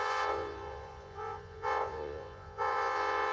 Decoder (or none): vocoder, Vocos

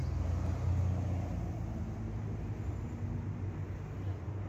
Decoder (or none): none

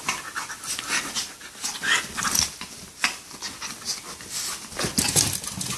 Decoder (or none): none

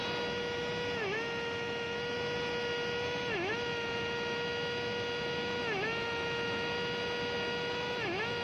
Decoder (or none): none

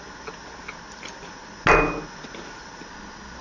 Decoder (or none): none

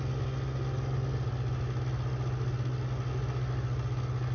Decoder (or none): none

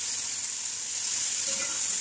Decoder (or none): none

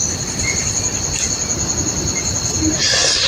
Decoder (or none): none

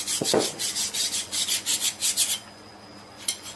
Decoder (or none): vocoder, Vocos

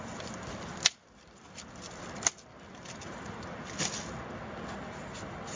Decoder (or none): none